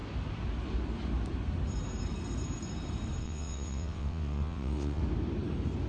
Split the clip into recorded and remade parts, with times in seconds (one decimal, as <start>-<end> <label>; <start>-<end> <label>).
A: 0.0-3.2 recorded; 3.2-5.0 remade; 5.0-5.9 recorded